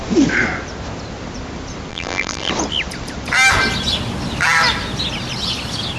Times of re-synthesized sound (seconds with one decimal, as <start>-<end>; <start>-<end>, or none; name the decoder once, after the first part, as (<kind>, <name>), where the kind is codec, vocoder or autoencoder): 1.9-2.5 (vocoder, BigVGAN v2)